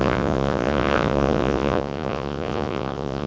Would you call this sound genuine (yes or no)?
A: no